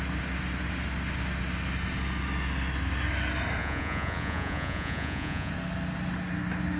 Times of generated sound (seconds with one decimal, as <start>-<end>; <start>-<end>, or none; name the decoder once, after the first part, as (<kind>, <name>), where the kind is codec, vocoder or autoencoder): 3.6-5.5 (vocoder, Vocos)